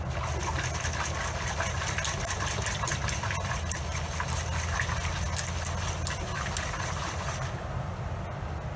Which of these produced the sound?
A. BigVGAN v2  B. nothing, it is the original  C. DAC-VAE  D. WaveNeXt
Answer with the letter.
B